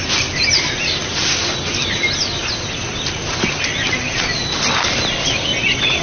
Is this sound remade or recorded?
recorded